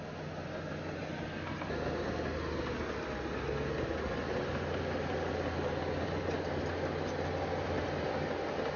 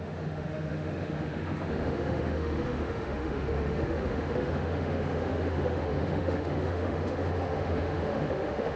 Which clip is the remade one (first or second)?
second